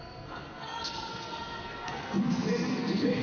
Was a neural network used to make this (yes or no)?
yes